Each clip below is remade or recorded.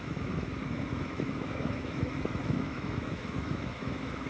remade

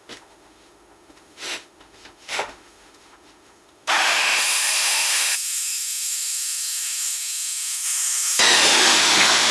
remade